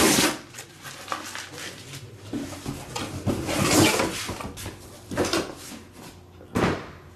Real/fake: real